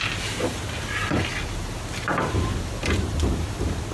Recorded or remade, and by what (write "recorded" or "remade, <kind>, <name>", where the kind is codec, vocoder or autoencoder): recorded